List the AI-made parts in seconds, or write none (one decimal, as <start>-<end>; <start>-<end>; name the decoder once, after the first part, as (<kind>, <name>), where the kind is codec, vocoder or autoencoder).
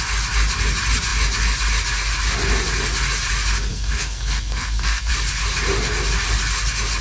3.7-5.1 (codec, SNAC)